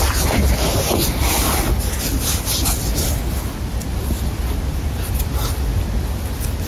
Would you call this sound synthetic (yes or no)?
no